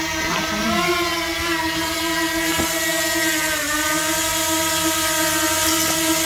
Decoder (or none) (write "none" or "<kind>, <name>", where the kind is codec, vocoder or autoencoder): none